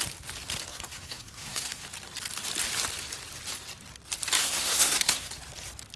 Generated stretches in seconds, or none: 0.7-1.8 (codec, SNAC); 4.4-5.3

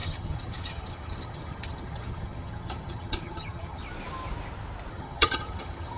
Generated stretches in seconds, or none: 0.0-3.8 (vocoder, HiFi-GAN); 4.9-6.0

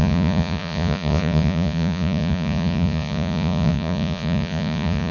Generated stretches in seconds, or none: 0.0-5.1 (vocoder, Vocos)

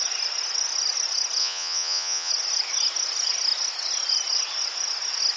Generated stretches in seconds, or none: 1.4-2.3 (vocoder, Vocos)

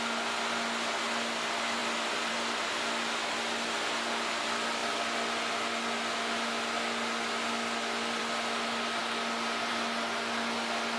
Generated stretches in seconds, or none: none

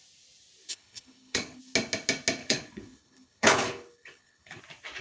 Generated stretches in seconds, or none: 0.7-1.6 (codec, HILCodec); 2.4-4.6

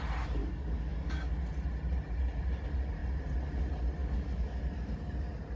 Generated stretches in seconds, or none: 0.4-1.3 (codec, DAC); 4.0-4.6

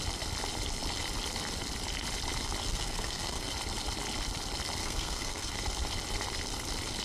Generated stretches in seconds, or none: 2.7-3.5 (codec, SNAC); 4.8-5.5